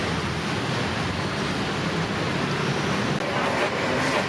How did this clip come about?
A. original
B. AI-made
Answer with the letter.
A